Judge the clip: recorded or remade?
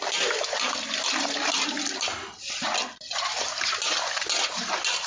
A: recorded